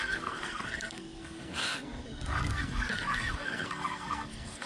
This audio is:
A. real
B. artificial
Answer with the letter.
B